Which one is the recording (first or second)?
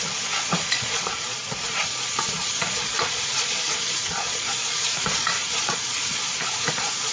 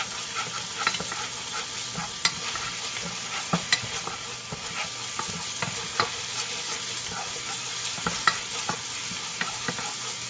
second